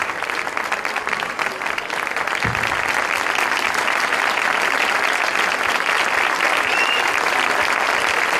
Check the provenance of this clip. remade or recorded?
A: recorded